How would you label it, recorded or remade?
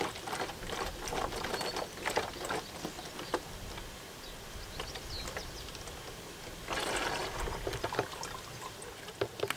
recorded